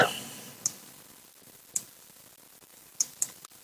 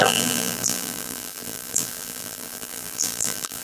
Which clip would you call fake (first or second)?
second